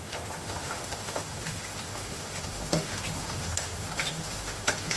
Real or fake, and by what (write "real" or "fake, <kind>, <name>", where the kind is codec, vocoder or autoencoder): fake, autoencoder, DAC-VAE